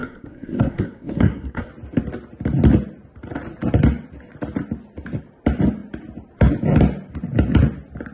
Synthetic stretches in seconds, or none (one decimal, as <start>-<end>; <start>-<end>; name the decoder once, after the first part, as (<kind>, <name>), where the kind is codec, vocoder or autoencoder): 0.0-1.7 (codec, SNAC)